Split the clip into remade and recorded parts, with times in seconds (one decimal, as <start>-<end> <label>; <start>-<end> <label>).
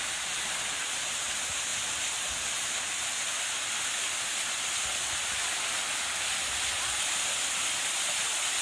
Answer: 0.0-8.6 recorded